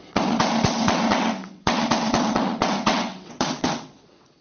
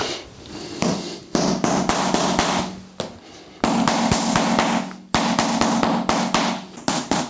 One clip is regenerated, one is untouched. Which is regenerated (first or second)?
first